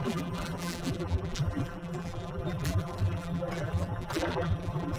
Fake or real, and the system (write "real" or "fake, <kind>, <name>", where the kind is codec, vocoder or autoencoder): fake, vocoder, BigVGAN v2